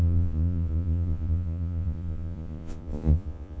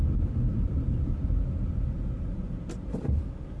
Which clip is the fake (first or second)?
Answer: first